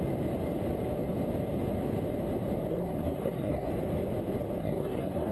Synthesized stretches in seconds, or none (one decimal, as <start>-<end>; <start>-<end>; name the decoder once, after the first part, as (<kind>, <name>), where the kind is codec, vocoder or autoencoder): 2.7-3.7 (codec, SNAC); 4.6-5.3